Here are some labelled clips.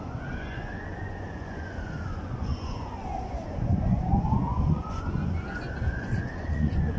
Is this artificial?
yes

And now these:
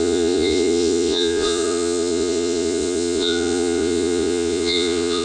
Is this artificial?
yes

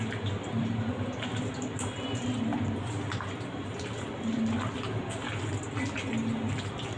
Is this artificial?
no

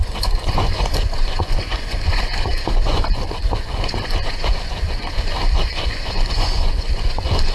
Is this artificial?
yes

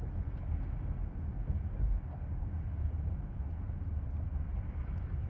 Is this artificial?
no